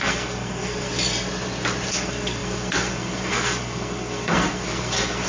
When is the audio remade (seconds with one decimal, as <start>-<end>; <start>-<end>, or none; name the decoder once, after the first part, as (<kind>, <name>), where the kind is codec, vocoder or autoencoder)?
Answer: 0.0-0.9 (codec, SNAC); 1.9-5.3